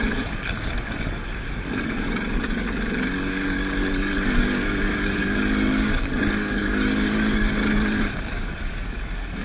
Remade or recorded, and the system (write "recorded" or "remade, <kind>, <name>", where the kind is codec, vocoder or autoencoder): remade, codec, DAC